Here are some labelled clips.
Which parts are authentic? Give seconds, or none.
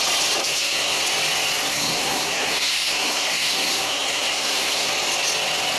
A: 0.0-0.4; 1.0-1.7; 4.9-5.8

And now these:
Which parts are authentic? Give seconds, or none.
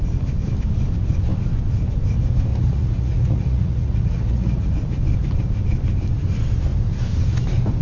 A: 0.0-2.5; 4.7-7.8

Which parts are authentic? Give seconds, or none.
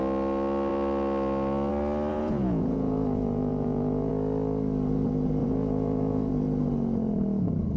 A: 0.0-2.1; 4.1-5.4; 6.3-7.8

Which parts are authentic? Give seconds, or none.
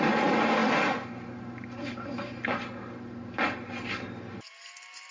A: 0.0-5.1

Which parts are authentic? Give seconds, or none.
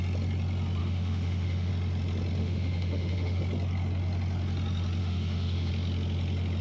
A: 0.0-0.8; 1.7-2.4; 3.4-5.0; 5.7-6.6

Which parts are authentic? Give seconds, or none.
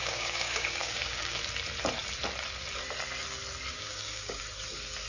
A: 1.4-3.7; 4.4-5.1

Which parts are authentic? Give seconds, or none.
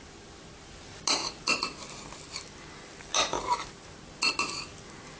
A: 0.0-5.2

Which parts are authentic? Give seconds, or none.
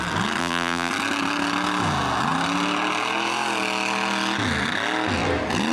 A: 0.0-0.4; 0.9-5.7